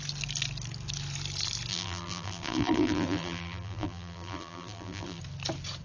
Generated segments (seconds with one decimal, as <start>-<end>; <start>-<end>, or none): 1.7-5.2